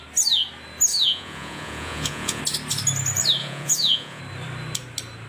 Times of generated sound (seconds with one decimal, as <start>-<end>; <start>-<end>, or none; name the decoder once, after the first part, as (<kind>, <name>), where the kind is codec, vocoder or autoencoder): 0.9-2.4 (vocoder, Vocos); 3.4-4.2